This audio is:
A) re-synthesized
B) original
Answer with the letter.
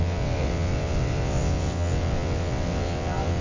A